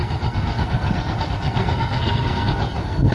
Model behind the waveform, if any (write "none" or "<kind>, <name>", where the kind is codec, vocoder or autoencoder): codec, SNAC